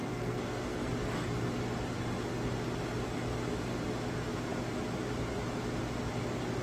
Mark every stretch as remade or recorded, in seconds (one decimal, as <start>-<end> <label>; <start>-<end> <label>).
0.0-0.9 remade; 0.9-6.6 recorded